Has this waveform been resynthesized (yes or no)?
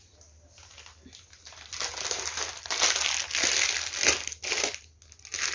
no